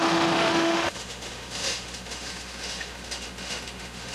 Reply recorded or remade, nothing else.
remade